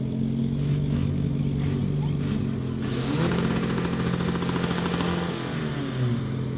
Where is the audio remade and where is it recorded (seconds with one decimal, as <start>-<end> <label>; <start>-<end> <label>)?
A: 0.0-0.4 recorded; 0.4-1.4 remade; 1.4-6.6 recorded